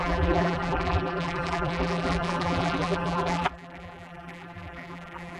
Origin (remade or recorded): remade